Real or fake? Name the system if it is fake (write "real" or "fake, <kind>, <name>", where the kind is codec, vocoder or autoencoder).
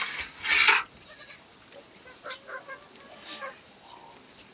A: fake, vocoder, BigVGAN v2